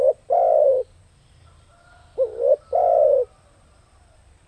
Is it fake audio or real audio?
real